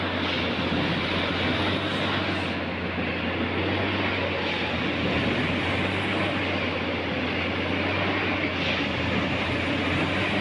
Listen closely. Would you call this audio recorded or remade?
recorded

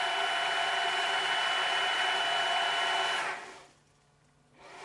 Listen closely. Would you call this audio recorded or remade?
recorded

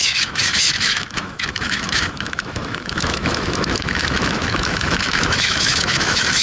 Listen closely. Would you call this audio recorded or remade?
remade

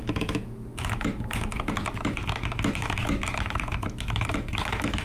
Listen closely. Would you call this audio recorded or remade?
remade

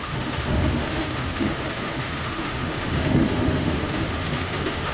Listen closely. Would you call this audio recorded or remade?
remade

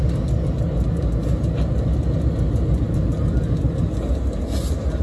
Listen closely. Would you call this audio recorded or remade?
recorded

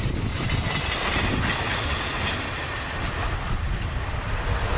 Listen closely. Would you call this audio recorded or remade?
recorded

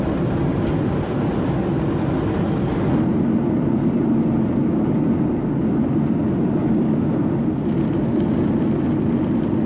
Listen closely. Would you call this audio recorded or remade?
recorded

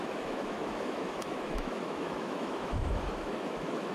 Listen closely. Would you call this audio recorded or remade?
remade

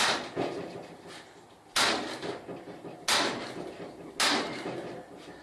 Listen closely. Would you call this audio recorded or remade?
recorded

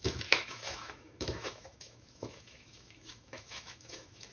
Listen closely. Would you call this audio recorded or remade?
remade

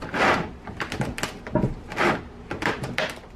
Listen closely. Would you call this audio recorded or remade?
recorded